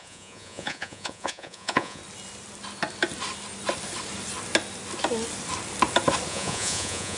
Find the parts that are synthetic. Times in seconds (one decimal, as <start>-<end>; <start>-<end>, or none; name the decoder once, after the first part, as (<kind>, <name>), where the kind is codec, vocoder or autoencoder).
0.0-2.0 (vocoder, Vocos); 6.3-7.2